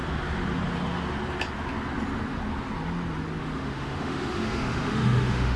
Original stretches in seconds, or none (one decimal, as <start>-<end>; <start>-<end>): 0.0-3.4